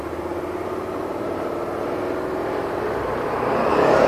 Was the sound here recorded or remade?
recorded